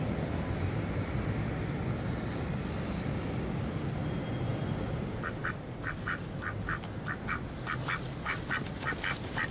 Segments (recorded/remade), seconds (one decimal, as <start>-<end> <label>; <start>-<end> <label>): 0.0-9.5 recorded